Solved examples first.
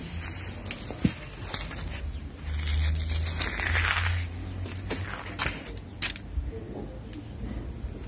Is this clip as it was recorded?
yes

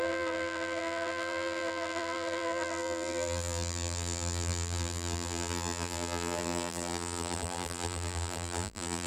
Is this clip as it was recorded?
no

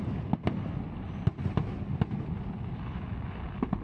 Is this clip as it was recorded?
yes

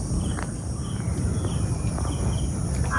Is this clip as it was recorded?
yes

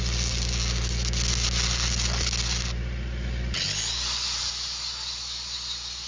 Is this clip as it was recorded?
yes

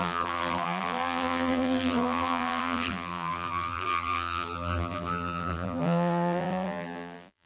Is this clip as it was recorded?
no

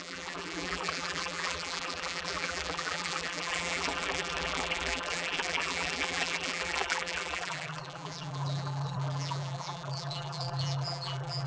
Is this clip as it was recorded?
no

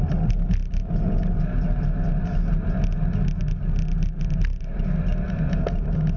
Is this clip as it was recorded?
yes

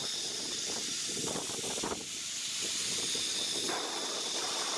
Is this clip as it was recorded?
yes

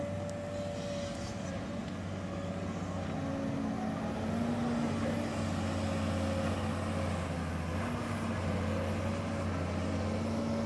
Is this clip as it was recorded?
yes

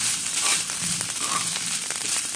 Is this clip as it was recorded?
no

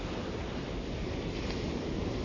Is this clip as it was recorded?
yes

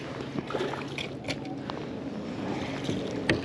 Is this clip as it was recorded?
yes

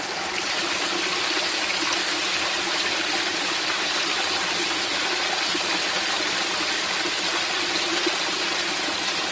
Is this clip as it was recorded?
yes